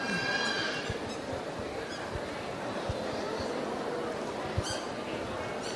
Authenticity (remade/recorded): recorded